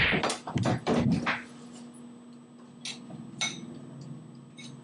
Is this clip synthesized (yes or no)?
no